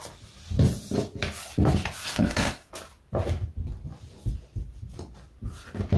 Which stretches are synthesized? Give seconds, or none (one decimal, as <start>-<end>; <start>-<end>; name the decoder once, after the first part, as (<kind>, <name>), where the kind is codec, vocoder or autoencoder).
2.0-2.7 (codec, SNAC)